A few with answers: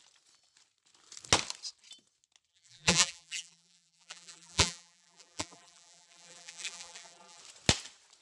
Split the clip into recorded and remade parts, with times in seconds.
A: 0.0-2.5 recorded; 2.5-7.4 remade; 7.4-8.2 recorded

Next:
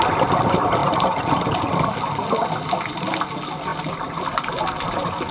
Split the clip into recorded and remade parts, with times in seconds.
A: 0.0-0.8 recorded; 0.8-1.6 remade; 1.6-5.3 recorded